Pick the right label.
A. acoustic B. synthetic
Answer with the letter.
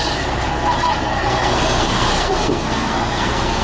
B